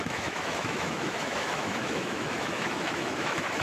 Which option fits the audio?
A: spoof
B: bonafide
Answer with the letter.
A